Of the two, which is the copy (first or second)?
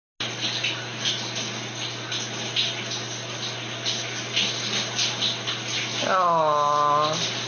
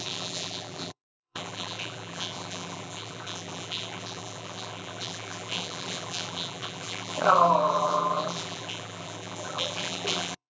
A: second